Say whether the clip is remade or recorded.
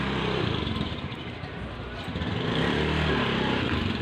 remade